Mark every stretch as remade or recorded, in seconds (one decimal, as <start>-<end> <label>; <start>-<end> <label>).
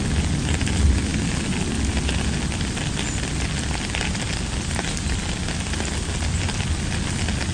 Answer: 0.0-7.5 recorded